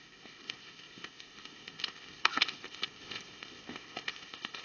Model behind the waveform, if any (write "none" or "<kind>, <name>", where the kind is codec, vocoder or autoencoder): codec, ZipCodec